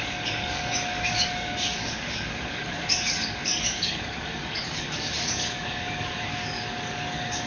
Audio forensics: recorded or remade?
remade